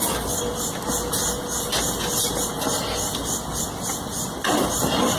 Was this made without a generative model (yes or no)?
yes